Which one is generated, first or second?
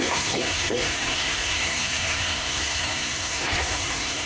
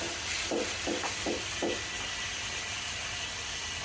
first